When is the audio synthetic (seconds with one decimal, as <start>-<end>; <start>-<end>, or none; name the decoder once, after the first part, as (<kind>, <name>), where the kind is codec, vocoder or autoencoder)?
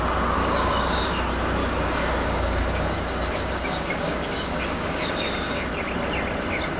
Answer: 0.4-1.2 (codec, DAC); 1.6-5.7